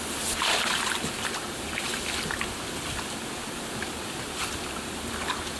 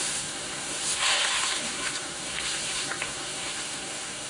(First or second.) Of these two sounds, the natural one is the first